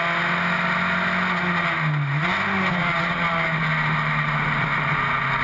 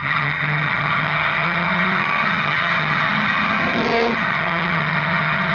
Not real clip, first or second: second